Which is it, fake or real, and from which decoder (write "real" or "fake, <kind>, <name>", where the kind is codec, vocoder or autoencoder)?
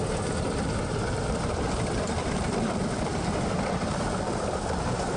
fake, vocoder, BigVGAN v2